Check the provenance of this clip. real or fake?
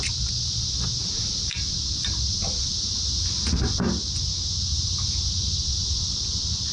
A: real